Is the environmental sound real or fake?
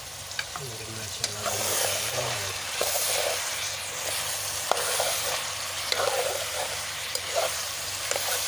fake